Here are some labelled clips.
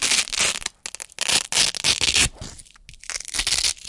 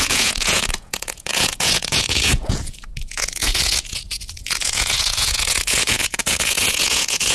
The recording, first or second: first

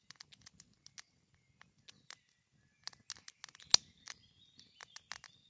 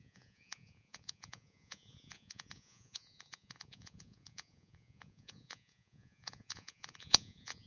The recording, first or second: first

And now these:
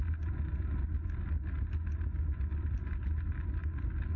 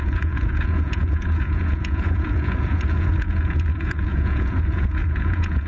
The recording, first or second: first